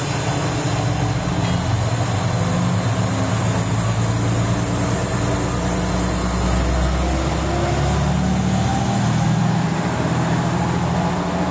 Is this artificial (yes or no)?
no